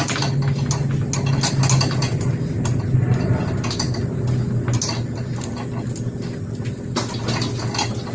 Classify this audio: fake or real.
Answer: real